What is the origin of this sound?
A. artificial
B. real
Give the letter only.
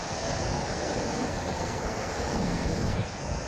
A